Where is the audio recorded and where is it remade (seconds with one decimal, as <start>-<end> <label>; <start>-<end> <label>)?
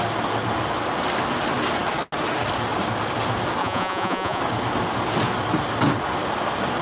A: 0.0-3.6 recorded; 3.6-4.4 remade; 4.4-6.8 recorded